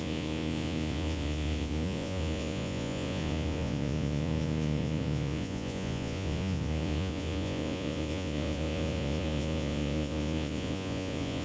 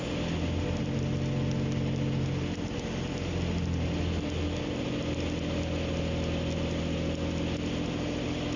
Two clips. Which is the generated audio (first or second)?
first